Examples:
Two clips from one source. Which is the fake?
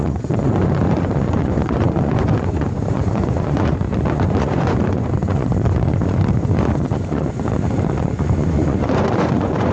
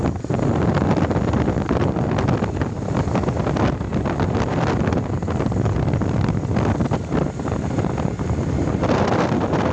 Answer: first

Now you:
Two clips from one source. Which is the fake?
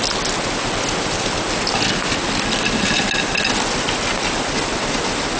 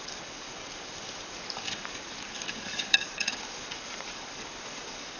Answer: second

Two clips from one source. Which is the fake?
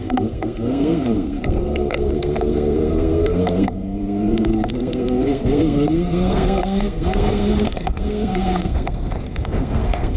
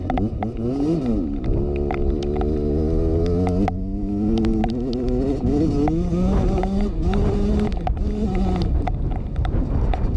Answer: first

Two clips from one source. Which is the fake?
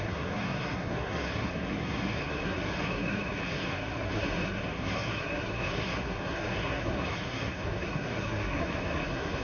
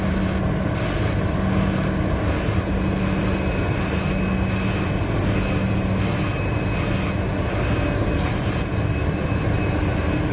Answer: first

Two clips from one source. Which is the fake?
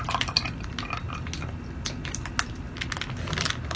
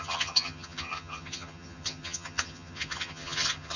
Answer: second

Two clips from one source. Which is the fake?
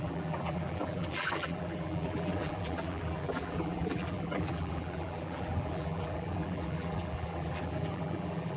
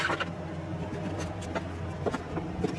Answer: first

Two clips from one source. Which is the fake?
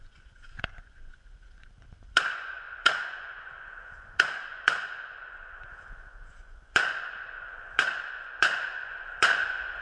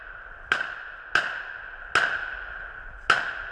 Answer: first